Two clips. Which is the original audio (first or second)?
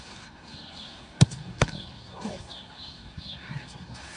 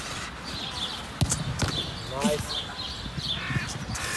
second